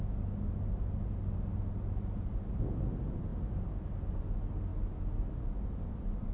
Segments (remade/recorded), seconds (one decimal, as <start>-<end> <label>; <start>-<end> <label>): 0.0-6.3 recorded